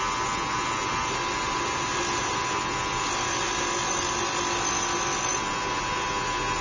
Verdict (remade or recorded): recorded